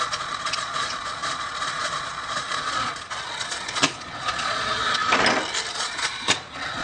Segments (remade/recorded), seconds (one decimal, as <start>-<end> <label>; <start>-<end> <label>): 0.0-5.0 remade; 5.0-5.7 recorded; 5.7-6.8 remade